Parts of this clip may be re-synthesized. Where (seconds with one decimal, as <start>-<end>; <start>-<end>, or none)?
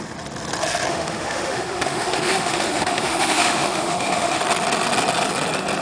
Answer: 0.9-4.4